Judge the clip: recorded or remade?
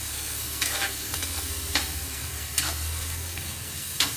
remade